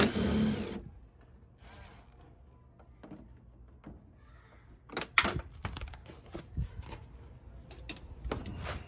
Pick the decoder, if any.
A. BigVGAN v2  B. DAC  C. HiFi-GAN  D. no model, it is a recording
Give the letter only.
D